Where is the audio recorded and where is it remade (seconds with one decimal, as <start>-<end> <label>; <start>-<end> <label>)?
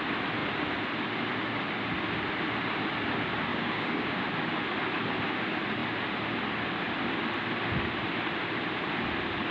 0.0-3.5 recorded; 3.5-4.2 remade; 4.2-9.5 recorded